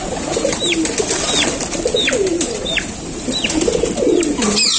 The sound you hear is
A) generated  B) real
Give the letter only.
B